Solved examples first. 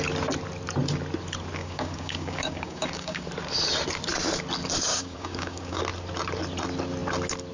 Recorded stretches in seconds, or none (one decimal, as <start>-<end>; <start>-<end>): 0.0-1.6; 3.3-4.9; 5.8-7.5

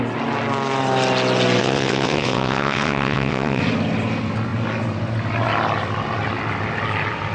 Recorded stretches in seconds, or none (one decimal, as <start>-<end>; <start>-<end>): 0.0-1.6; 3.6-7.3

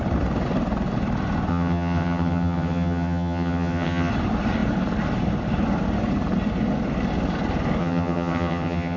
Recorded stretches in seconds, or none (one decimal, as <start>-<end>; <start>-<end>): 0.0-1.5; 4.1-7.8

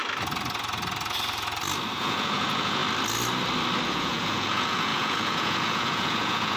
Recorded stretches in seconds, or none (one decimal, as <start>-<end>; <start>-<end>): 0.0-1.9; 2.8-3.9

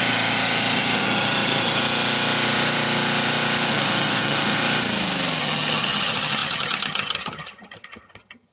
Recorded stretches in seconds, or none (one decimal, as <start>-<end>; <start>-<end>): 1.8-3.7; 4.6-5.4